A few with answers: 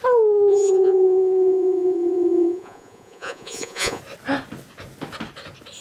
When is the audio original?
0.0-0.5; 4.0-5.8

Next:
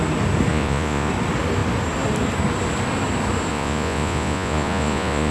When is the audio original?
0.0-0.5; 1.1-3.5

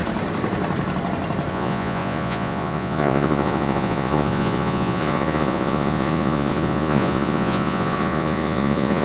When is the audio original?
0.0-1.5